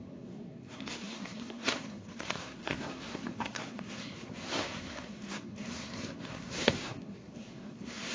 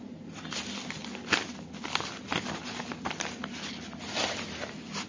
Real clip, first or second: second